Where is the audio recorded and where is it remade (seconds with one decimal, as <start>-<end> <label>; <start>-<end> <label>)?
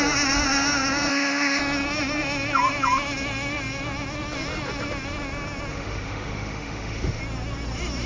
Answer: 0.0-1.1 recorded; 1.1-1.6 remade; 1.6-5.7 recorded; 5.7-7.2 remade; 7.2-8.1 recorded